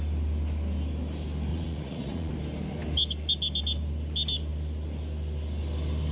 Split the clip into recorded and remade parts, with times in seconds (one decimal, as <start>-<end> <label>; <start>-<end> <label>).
0.0-1.5 recorded; 1.5-2.3 remade; 2.3-6.1 recorded